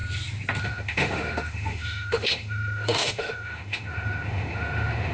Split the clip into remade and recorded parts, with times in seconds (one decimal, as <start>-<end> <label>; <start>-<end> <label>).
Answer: 0.0-0.6 recorded; 0.6-5.1 remade